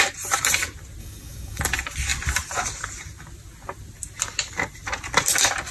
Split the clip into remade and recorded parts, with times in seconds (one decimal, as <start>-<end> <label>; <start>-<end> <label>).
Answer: 0.0-1.0 recorded; 1.0-1.6 remade; 1.6-5.7 recorded